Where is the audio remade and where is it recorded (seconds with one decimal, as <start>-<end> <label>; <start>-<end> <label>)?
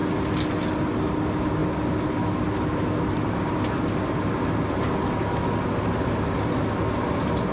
0.0-7.5 recorded